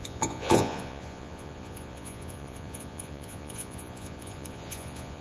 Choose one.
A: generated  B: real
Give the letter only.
A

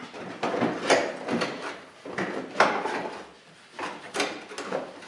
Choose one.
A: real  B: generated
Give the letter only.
A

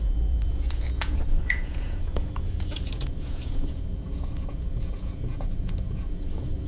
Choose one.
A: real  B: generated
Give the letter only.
B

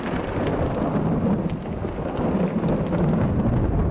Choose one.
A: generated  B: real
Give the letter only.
B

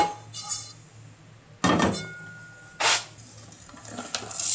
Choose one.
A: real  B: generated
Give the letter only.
A